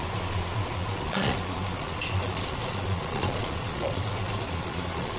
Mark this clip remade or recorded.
remade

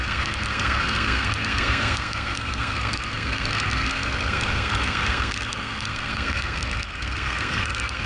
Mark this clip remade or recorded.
remade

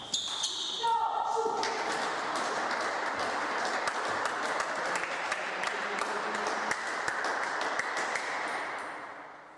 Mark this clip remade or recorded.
recorded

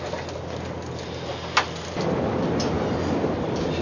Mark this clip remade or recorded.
recorded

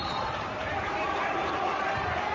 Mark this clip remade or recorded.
remade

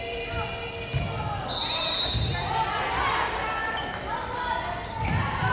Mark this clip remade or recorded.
recorded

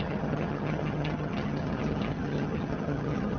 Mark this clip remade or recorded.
remade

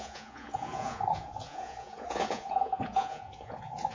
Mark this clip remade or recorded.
remade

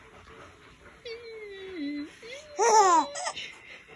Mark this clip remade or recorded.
recorded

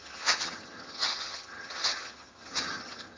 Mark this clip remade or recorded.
remade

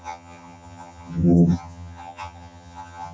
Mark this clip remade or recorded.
remade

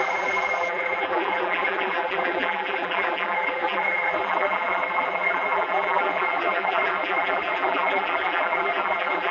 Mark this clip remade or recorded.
remade